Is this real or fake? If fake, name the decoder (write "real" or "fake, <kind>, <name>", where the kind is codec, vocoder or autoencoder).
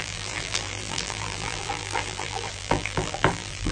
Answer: fake, vocoder, BigVGAN v2